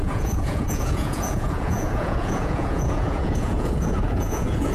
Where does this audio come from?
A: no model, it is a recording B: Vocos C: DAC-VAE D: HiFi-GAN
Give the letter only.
B